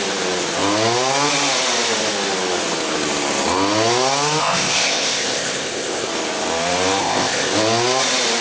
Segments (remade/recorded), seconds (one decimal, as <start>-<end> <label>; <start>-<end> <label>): 0.0-4.4 recorded; 4.4-6.1 remade; 6.1-7.0 recorded; 7.0-7.5 remade; 7.5-8.4 recorded